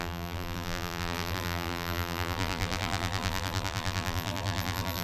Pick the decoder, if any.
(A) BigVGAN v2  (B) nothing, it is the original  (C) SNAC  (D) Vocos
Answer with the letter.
A